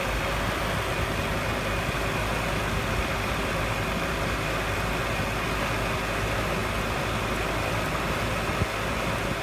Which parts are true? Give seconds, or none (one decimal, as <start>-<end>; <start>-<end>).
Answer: 0.0-9.4